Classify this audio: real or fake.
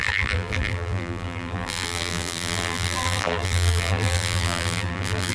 fake